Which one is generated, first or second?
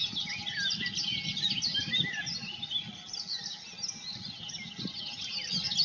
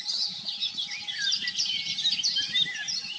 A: second